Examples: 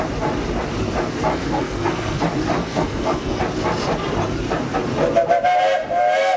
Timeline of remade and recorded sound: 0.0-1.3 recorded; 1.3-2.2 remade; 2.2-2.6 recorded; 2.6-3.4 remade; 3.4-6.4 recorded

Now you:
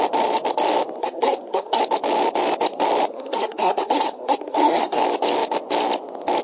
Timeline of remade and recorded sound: 0.0-1.0 recorded; 1.0-1.8 remade; 1.8-3.1 recorded; 3.1-5.0 remade; 5.0-6.4 recorded

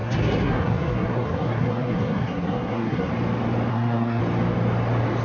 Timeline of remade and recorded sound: 0.0-3.1 remade; 3.1-3.7 recorded; 3.7-4.2 remade; 4.2-5.2 recorded

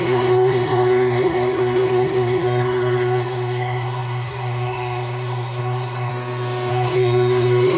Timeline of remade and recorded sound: 0.0-6.1 remade; 6.1-6.7 recorded; 6.7-7.8 remade